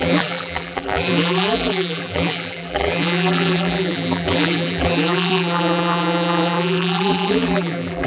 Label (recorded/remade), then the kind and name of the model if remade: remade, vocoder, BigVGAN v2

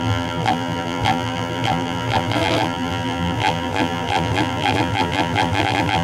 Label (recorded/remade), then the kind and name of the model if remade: remade, vocoder, BigVGAN v2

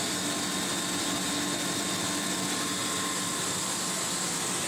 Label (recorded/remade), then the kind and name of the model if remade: recorded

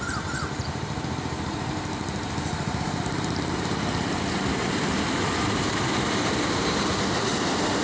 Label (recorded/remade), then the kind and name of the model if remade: remade, vocoder, BigVGAN v2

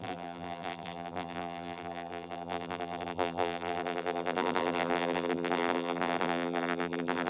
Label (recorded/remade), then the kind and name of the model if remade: remade, vocoder, BigVGAN v2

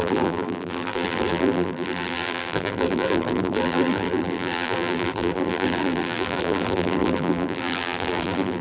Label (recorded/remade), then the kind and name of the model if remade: remade, vocoder, BigVGAN v2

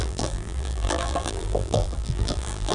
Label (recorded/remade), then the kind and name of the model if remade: remade, vocoder, BigVGAN v2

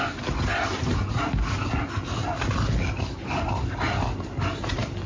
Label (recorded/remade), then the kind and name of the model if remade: recorded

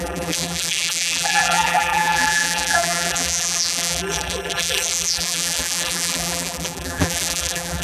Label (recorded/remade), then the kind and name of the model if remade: remade, vocoder, BigVGAN v2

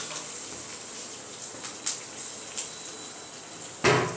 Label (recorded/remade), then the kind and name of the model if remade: recorded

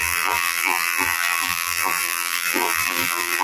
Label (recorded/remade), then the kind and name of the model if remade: remade, vocoder, BigVGAN v2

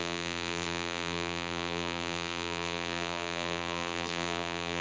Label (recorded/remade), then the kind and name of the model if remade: remade, vocoder, BigVGAN v2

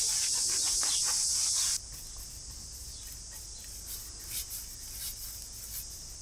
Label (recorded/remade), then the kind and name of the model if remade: recorded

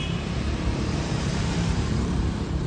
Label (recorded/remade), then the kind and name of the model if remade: remade, vocoder, BigVGAN v2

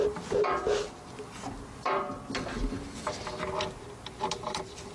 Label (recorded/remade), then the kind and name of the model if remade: recorded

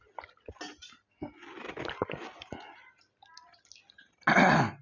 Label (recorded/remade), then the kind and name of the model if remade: recorded